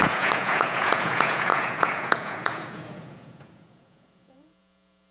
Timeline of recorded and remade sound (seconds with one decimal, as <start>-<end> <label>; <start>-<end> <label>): 0.0-5.1 remade